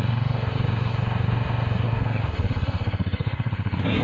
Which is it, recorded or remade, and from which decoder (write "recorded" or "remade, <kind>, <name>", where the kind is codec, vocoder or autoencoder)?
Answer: remade, codec, SNAC